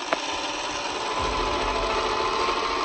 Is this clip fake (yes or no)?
no